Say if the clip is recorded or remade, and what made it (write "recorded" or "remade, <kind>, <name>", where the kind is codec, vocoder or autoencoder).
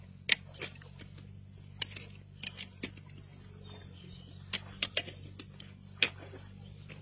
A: recorded